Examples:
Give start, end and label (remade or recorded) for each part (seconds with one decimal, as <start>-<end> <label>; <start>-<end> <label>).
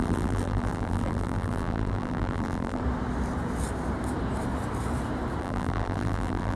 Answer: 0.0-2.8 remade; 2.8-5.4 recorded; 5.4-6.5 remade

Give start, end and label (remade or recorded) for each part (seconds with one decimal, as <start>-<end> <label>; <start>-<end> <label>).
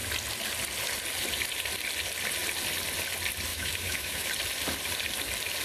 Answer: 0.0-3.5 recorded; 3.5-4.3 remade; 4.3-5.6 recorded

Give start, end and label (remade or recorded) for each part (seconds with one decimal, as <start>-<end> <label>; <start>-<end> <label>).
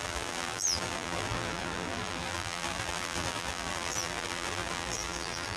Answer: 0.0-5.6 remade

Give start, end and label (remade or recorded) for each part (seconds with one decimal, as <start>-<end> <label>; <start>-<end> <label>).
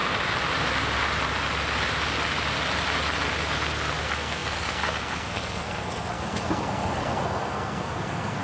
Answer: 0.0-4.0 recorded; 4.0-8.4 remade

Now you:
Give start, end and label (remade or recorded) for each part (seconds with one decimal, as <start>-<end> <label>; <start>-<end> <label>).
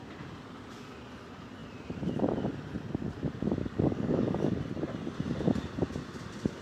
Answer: 0.0-3.6 recorded; 3.6-4.6 remade; 4.6-6.6 recorded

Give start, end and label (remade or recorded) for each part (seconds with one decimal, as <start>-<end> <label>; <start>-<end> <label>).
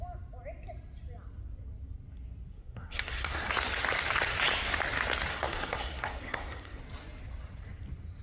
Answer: 0.0-2.5 recorded; 2.5-3.5 remade; 3.5-5.3 recorded; 5.3-6.8 remade; 6.8-8.2 recorded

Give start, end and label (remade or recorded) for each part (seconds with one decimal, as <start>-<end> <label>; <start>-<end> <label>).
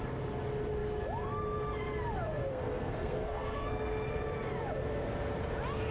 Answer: 0.0-2.5 recorded; 2.5-4.2 remade; 4.2-5.9 recorded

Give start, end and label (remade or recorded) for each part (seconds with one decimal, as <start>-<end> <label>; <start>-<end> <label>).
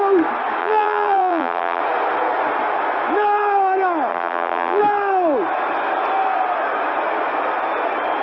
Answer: 0.0-0.6 recorded; 0.6-1.8 remade; 1.8-4.1 recorded; 4.1-4.8 remade; 4.8-8.2 recorded